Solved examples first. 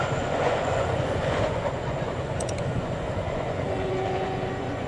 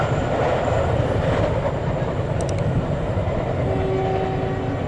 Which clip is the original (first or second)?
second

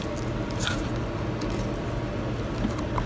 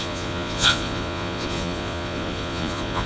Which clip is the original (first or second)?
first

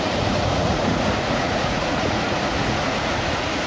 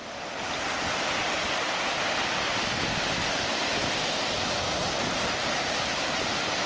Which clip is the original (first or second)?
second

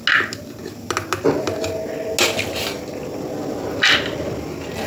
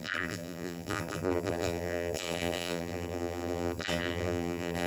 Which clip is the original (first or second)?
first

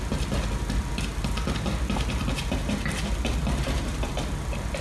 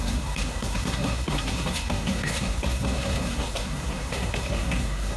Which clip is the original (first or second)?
first